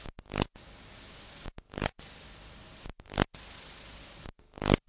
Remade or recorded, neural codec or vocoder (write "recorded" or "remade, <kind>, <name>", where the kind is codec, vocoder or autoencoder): recorded